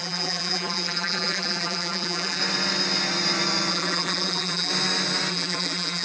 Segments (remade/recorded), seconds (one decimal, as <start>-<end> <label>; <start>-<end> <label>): 0.0-2.4 remade; 2.4-3.7 recorded; 3.7-4.7 remade; 4.7-5.3 recorded; 5.3-6.0 remade